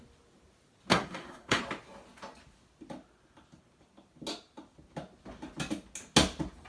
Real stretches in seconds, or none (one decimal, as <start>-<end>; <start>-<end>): 0.0-0.9; 1.6-6.7